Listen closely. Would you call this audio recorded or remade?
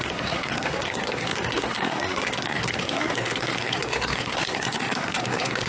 remade